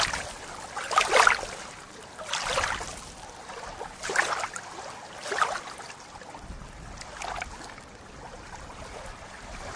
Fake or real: real